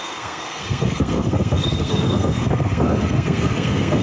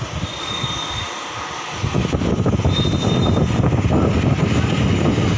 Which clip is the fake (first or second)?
first